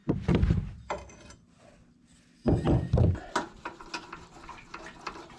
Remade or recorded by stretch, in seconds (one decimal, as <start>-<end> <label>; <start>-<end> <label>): 0.0-5.4 recorded